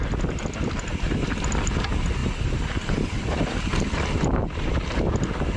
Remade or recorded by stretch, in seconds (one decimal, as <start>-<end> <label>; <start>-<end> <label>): 0.0-5.6 recorded